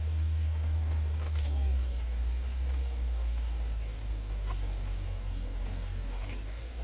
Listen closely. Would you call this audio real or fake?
fake